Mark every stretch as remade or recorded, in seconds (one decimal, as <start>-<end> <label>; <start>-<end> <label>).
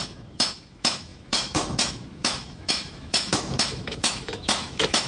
0.0-5.1 remade